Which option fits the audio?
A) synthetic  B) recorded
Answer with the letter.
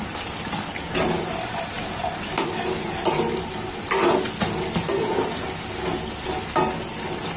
B